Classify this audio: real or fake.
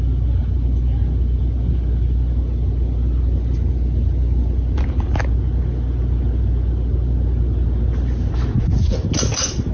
real